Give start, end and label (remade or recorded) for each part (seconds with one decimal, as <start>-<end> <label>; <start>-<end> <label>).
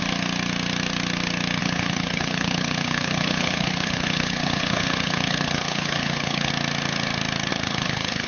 0.0-1.6 recorded; 1.6-6.5 remade; 6.5-7.5 recorded; 7.5-8.3 remade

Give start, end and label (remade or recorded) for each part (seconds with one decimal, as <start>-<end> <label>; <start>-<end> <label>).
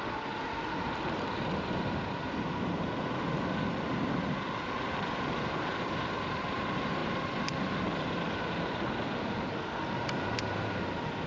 0.0-11.3 recorded